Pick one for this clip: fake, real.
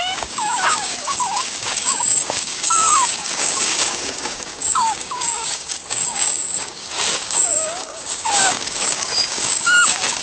fake